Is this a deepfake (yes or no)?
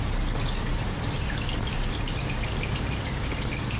no